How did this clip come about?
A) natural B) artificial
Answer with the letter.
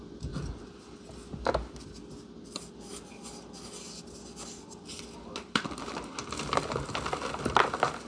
A